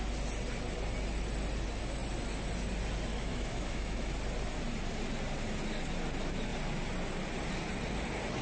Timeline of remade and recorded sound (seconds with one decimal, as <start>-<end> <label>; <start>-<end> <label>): 0.0-3.1 recorded; 3.1-4.1 remade; 4.1-8.4 recorded